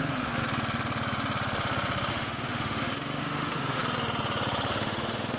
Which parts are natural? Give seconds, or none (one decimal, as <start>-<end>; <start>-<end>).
0.4-2.1; 3.8-4.7